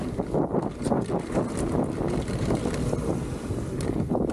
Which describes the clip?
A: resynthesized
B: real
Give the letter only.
B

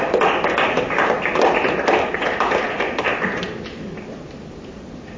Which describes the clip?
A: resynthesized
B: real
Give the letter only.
B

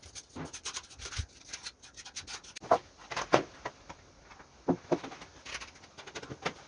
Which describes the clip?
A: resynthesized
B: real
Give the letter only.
B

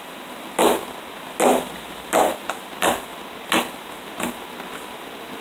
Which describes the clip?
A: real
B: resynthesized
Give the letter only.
A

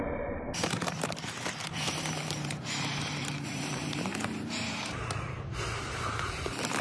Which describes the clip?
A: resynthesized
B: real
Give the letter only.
A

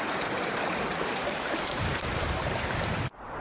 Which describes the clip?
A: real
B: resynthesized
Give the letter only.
B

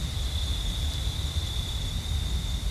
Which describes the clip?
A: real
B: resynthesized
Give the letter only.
B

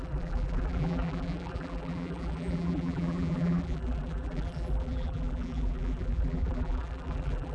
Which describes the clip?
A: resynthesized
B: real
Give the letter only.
A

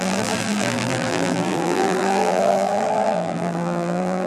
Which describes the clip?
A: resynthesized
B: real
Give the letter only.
A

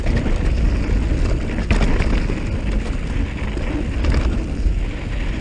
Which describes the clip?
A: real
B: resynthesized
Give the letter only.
A